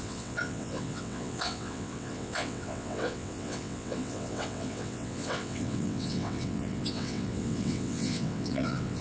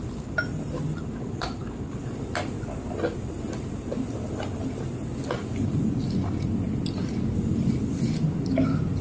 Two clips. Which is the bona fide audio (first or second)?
second